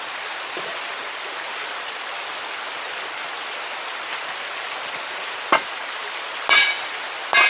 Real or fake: real